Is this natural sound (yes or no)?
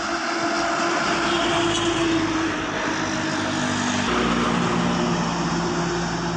yes